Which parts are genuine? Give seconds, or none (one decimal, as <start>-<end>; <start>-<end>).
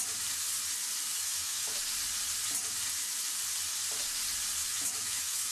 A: 0.0-1.1; 1.8-4.6